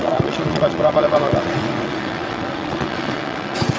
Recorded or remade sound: remade